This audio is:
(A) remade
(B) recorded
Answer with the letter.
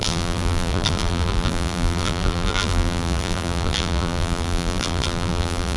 A